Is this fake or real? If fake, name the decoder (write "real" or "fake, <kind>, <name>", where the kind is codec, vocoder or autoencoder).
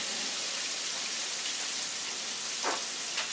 real